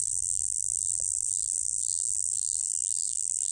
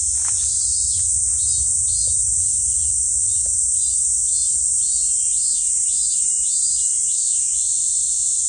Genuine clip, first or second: second